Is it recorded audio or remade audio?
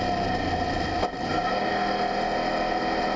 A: recorded